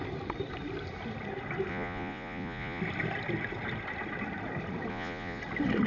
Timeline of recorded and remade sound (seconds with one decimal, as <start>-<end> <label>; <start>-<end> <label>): 0.0-1.7 recorded; 1.7-2.8 remade; 2.8-4.9 recorded; 4.9-5.4 remade; 5.4-5.9 recorded